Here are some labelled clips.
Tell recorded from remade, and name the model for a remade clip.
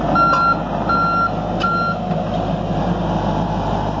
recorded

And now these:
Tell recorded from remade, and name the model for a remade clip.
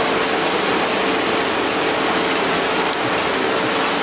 recorded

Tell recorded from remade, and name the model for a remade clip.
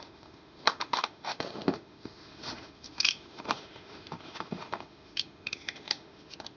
remade, autoencoder, DAC-VAE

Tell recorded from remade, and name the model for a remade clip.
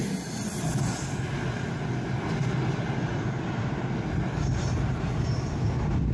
recorded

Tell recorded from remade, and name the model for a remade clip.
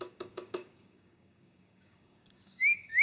remade, codec, DAC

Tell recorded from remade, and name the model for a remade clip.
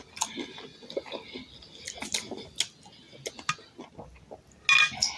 recorded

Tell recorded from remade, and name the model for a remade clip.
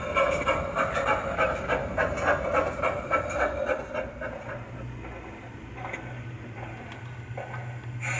recorded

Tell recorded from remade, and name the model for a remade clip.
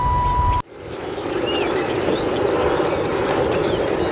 recorded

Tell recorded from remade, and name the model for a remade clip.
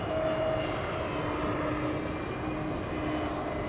recorded